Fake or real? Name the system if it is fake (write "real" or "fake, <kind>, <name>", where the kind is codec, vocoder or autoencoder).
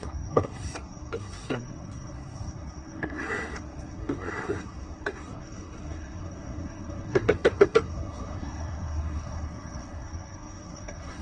fake, codec, SNAC